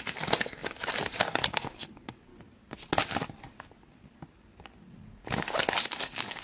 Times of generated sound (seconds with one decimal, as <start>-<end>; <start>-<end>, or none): 0.0-2.3; 5.8-6.4